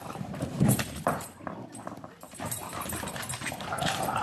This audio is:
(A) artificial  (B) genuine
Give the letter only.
A